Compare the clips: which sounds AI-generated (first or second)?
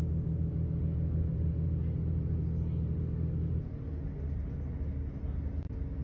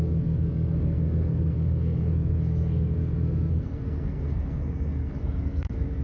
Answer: second